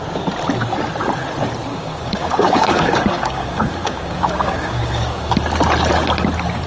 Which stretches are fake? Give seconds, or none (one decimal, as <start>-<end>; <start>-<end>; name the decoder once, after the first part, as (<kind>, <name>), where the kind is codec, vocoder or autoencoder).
1.7-5.3 (codec, DAC)